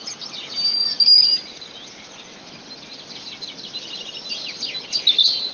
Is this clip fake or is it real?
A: real